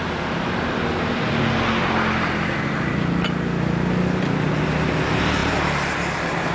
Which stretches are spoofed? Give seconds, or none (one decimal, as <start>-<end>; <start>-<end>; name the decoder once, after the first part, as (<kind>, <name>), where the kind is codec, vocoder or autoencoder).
none